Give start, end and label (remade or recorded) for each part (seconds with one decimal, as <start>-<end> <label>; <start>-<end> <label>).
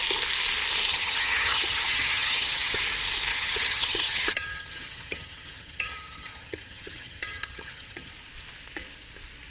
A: 0.0-0.9 recorded; 0.9-2.8 remade; 2.8-3.3 recorded; 3.3-8.1 remade; 8.1-9.5 recorded